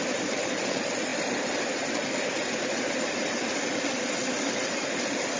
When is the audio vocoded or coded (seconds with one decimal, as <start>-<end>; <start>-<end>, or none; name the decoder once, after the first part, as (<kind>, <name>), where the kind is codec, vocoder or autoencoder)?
none